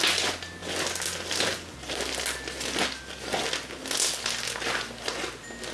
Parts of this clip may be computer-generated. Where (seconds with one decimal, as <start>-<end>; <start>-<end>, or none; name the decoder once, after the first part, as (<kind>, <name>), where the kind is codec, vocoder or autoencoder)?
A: none